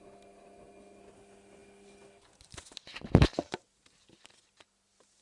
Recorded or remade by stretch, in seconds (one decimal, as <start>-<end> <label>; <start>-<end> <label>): 0.0-5.2 recorded